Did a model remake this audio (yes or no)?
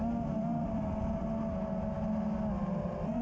no